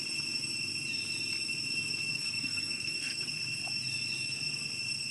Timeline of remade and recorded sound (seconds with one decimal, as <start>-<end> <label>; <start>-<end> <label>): 0.0-2.1 recorded; 2.1-3.3 remade; 3.3-5.1 recorded